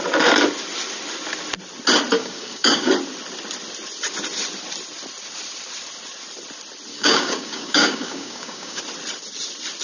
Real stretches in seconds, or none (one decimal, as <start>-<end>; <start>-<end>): 0.0-2.2; 2.9-6.9; 8.8-9.8